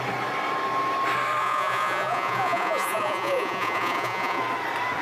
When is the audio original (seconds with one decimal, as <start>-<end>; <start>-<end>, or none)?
0.0-1.4; 4.4-5.0